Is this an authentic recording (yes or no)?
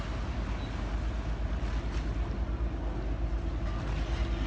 yes